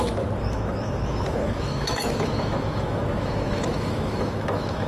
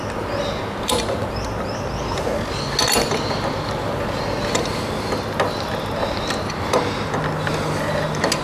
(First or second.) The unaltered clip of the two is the second